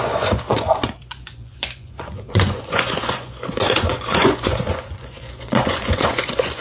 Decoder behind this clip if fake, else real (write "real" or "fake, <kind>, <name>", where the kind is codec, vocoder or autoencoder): fake, vocoder, Vocos